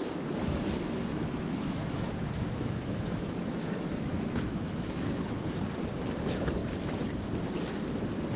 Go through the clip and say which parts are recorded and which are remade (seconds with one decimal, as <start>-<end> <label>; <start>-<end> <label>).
0.0-1.1 recorded; 1.1-5.5 remade; 5.5-8.4 recorded